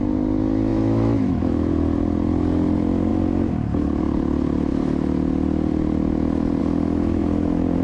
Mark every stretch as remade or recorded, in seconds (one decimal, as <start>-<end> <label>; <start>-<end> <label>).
0.0-0.7 recorded; 0.7-1.7 remade; 1.7-7.8 recorded